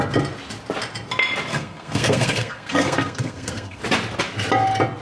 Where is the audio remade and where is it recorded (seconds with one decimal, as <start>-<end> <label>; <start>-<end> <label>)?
0.0-1.5 recorded; 1.5-3.8 remade; 3.8-5.0 recorded

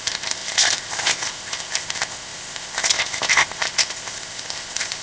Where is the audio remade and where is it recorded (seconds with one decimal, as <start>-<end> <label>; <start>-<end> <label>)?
0.0-5.0 remade

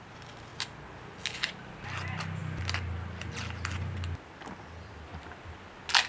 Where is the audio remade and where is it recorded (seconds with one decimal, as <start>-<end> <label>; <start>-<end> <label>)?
0.0-6.1 recorded

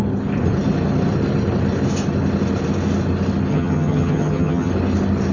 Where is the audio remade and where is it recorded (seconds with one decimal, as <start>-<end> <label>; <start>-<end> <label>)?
0.0-3.5 recorded; 3.5-4.7 remade; 4.7-5.3 recorded

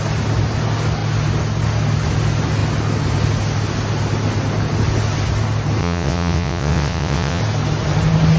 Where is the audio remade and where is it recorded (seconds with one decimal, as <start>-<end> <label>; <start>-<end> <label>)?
0.0-5.8 recorded; 5.8-7.4 remade; 7.4-8.4 recorded

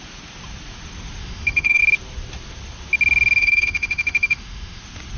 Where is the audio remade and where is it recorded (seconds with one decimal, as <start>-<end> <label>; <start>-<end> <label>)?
0.0-1.2 recorded; 1.2-1.8 remade; 1.8-3.4 recorded; 3.4-4.8 remade; 4.8-5.2 recorded

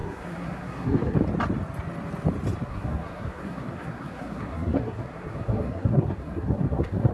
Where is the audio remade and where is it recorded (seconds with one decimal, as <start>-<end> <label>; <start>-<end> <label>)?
0.0-1.2 remade; 1.2-2.7 recorded; 2.7-7.1 remade

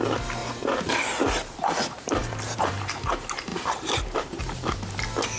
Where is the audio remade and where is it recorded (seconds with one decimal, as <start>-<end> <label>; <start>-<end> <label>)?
0.0-0.4 recorded; 0.4-1.6 remade; 1.6-2.2 recorded; 2.2-3.1 remade; 3.1-3.5 recorded; 3.5-4.4 remade; 4.4-5.4 recorded